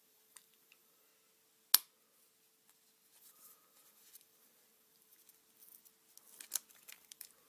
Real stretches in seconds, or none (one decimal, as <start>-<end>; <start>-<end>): 1.1-3.2; 5.2-6.7